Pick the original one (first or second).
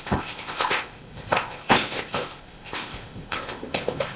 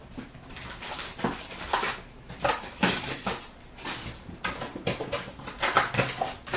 second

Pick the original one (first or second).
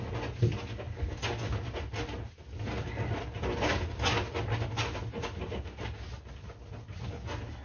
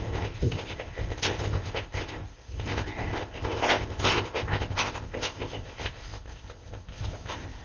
first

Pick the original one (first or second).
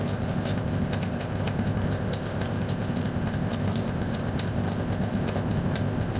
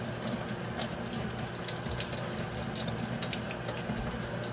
second